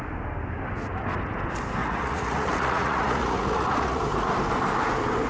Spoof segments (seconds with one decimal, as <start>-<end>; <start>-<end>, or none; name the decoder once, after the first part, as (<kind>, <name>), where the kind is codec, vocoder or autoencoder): 1.8-4.0 (vocoder, Vocos)